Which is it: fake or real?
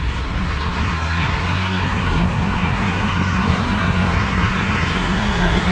fake